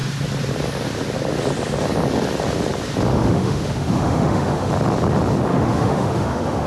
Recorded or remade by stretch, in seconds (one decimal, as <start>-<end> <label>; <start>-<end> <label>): 0.0-3.1 recorded; 3.1-4.7 remade; 4.7-5.5 recorded; 5.5-6.7 remade